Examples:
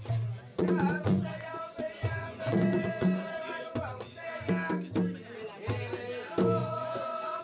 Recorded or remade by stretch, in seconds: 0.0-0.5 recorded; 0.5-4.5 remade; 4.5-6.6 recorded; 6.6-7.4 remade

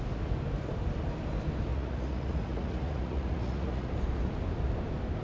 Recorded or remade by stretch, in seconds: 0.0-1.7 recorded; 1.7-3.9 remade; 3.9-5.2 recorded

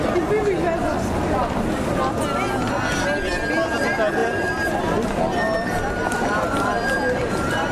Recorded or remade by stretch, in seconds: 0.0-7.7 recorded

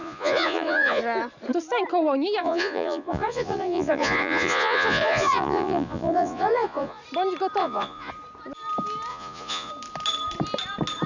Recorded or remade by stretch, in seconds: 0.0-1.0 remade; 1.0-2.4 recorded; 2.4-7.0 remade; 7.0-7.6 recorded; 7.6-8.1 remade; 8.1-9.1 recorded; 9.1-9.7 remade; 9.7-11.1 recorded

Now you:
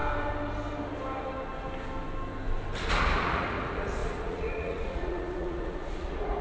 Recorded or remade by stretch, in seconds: 0.0-2.9 recorded; 2.9-6.4 remade

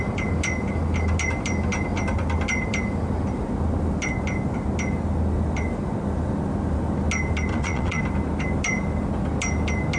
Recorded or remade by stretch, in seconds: 0.0-7.5 recorded; 7.5-8.0 remade; 8.0-10.0 recorded